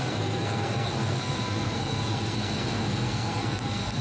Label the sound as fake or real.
fake